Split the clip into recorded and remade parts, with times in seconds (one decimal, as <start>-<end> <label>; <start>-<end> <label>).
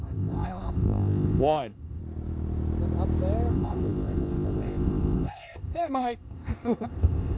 0.0-2.0 remade; 2.0-3.5 recorded; 3.5-7.4 remade